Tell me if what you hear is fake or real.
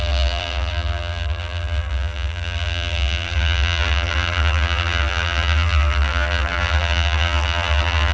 fake